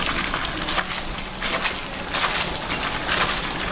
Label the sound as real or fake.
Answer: real